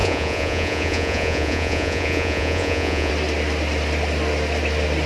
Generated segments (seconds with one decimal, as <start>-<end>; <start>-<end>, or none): 0.0-3.1